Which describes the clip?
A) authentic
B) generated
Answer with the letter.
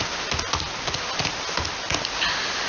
A